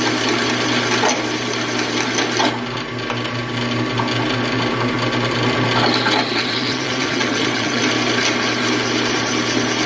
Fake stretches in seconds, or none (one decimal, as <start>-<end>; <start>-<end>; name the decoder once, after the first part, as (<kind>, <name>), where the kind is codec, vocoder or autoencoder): 6.3-7.8 (vocoder, WaveNeXt)